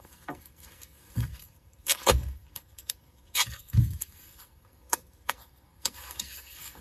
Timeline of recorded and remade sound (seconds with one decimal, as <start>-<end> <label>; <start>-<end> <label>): 0.0-6.8 remade